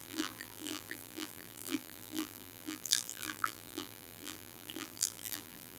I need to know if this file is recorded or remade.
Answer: remade